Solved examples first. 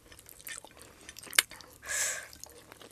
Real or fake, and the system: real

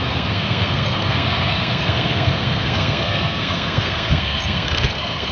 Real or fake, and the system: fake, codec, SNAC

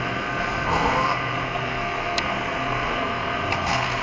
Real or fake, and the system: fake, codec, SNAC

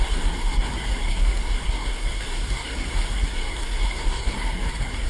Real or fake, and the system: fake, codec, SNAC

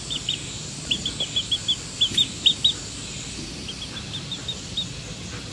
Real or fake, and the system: real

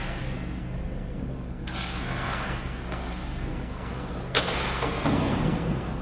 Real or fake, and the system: fake, codec, SNAC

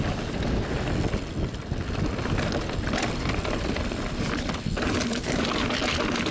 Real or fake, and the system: real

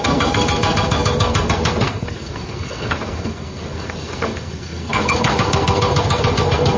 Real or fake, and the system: fake, codec, SNAC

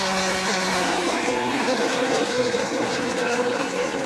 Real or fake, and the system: fake, codec, SNAC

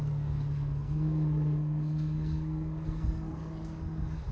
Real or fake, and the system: fake, codec, SNAC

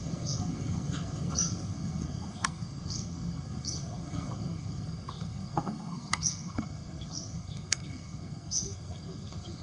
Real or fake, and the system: fake, codec, SNAC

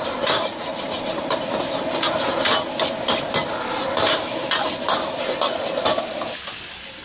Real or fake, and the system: real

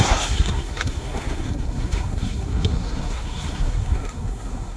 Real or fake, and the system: fake, codec, SNAC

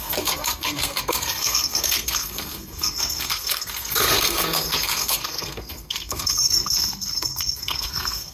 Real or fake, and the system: fake, codec, SNAC